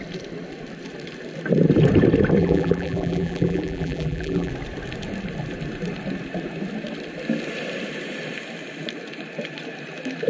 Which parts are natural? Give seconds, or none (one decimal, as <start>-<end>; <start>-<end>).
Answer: 0.0-2.4; 4.5-10.3